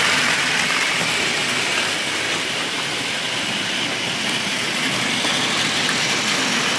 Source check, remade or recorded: recorded